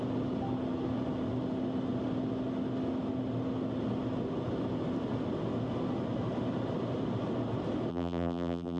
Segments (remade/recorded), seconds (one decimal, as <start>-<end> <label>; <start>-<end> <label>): 0.0-7.9 recorded; 7.9-8.8 remade